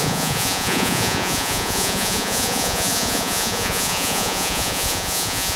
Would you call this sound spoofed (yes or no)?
yes